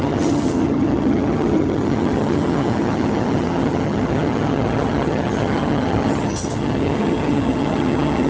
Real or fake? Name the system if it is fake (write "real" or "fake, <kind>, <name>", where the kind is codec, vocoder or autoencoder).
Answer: fake, vocoder, HiFi-GAN